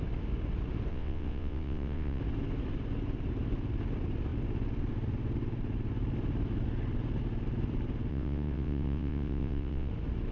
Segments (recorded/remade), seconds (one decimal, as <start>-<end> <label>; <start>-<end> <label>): 0.0-0.9 recorded; 0.9-2.2 remade; 2.2-8.1 recorded; 8.1-9.9 remade; 9.9-10.3 recorded